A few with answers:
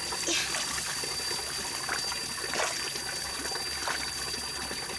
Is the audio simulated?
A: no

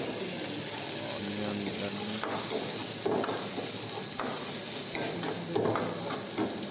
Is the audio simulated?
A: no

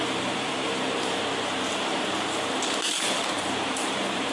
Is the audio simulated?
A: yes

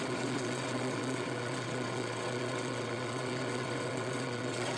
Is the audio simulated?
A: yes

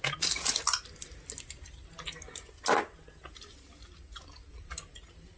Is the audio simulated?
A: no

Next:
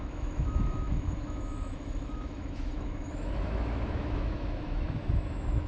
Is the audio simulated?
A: yes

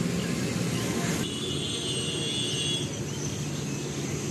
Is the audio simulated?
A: no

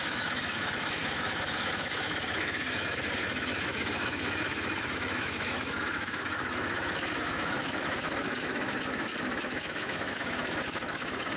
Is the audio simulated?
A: yes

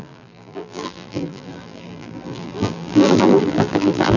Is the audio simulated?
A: yes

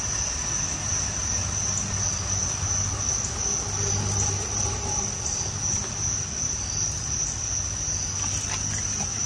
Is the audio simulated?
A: no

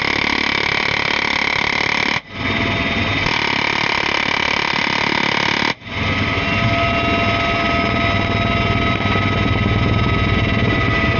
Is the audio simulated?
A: no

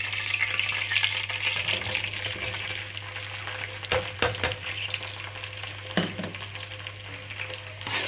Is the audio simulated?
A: no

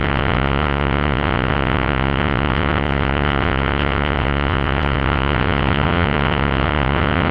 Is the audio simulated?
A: yes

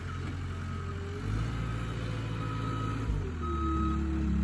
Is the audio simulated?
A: no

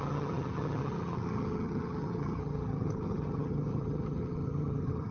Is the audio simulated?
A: yes